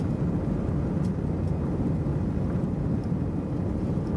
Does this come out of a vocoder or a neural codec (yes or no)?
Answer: no